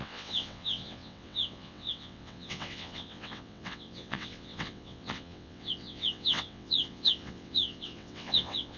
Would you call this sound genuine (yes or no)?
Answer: no